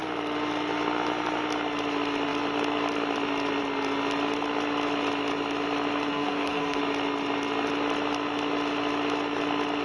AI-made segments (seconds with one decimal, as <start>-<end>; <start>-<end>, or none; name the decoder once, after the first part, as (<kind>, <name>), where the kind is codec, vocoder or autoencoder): 6.1-6.8 (codec, SNAC)

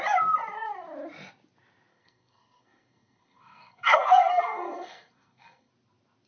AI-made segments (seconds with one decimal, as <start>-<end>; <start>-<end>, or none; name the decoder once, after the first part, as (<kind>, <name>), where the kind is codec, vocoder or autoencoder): 1.9-5.7 (codec, SNAC)

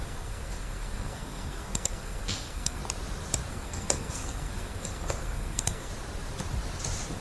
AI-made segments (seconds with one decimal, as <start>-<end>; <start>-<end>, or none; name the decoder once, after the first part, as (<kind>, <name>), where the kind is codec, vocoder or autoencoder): 0.0-2.8 (codec, SNAC); 3.5-5.9

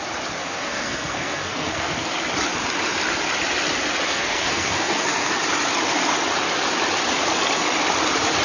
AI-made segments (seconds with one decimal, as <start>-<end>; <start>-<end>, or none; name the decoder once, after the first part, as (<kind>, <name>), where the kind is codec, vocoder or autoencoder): 0.4-2.1 (codec, SNAC); 4.1-5.3

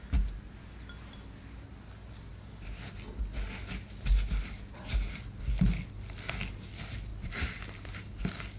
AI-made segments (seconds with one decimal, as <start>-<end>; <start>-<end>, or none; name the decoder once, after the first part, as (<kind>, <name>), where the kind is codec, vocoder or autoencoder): none

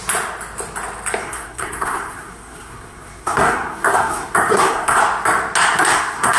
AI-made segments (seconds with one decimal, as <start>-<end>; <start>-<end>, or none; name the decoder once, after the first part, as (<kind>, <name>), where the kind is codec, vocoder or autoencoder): 1.2-5.0 (codec, SNAC); 5.9-6.4

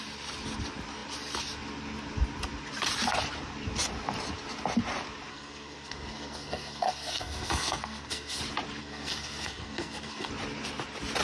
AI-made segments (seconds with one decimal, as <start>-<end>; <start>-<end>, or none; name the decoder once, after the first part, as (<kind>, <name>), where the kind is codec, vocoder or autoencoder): 5.3-8.4 (codec, SNAC); 8.8-10.3

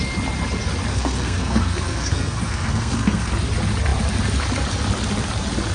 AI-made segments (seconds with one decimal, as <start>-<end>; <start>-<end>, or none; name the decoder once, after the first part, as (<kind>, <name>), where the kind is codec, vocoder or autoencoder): 0.9-3.3 (codec, SNAC)